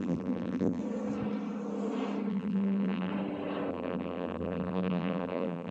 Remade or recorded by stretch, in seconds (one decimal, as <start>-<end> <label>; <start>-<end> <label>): 0.0-0.8 remade; 0.8-2.3 recorded; 2.3-3.1 remade; 3.1-3.7 recorded; 3.7-5.7 remade